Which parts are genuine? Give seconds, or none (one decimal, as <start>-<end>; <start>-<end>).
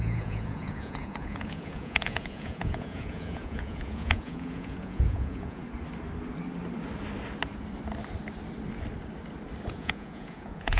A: 5.6-9.7